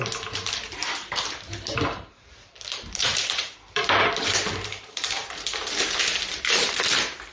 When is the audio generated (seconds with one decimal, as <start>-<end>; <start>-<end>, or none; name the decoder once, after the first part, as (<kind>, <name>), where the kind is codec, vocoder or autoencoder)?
0.0-5.6 (vocoder, BigVGAN v2)